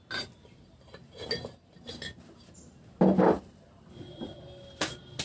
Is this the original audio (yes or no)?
yes